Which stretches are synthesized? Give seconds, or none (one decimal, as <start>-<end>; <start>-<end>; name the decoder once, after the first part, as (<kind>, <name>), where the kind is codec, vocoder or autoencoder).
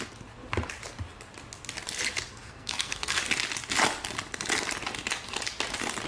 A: 2.3-3.2 (codec, SNAC)